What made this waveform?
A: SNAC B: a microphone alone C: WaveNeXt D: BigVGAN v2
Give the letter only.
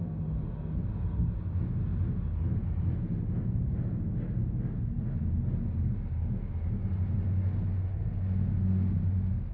B